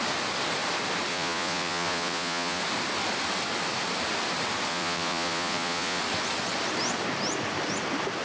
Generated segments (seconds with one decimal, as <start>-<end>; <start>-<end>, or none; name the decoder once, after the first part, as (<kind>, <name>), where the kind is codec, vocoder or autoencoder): 1.1-2.6 (vocoder, Vocos); 4.7-6.0